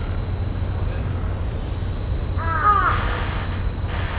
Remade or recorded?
recorded